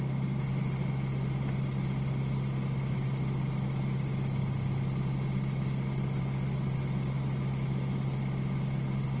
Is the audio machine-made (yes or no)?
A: no